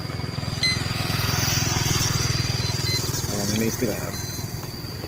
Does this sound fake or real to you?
real